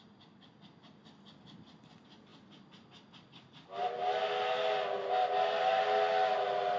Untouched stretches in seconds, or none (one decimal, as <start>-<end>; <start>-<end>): 0.0-6.8